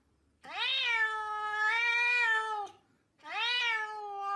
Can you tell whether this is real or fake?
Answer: real